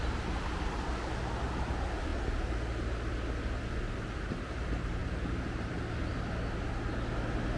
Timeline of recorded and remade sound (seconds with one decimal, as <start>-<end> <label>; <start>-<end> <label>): 0.0-5.0 recorded; 5.0-5.7 remade; 5.7-7.6 recorded